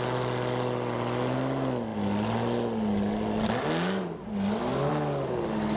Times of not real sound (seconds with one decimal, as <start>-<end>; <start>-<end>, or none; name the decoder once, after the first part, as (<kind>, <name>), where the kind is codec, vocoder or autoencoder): none